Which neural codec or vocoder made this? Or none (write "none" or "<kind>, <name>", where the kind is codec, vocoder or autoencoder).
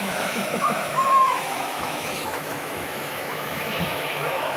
autoencoder, DAC-VAE